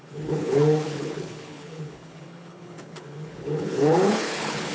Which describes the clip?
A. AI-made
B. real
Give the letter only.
A